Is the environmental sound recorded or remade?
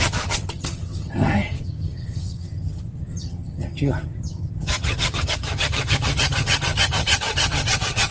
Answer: remade